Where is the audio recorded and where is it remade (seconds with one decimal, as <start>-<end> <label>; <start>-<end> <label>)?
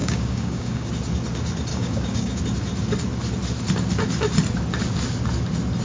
0.0-0.9 remade; 0.9-1.7 recorded; 1.7-2.4 remade; 2.4-5.8 recorded